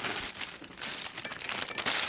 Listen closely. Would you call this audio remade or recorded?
recorded